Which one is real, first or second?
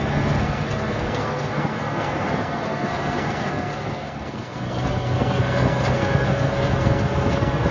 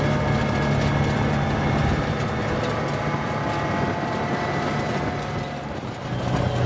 second